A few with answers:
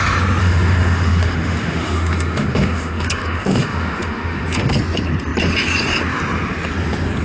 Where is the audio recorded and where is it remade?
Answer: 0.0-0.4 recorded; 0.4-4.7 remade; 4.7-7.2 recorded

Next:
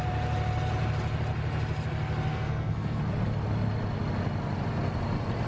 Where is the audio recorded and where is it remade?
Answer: 0.0-2.3 recorded; 2.3-3.0 remade; 3.0-5.5 recorded

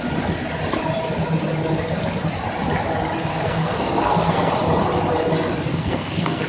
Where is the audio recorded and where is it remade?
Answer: 0.0-3.3 recorded; 3.3-4.5 remade; 4.5-5.7 recorded; 5.7-6.5 remade

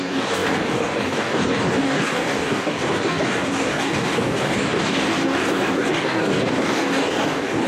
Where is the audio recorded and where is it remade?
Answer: 0.0-7.7 remade